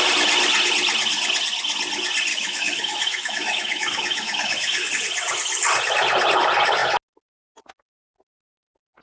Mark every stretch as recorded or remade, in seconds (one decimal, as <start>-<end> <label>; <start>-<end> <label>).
0.0-2.3 recorded; 2.3-4.9 remade; 4.9-9.0 recorded